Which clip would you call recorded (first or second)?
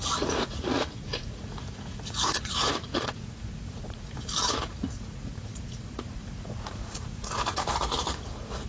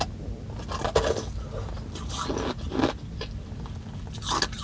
second